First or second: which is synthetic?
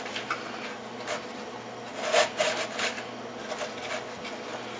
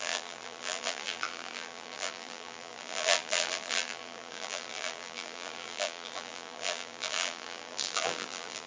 second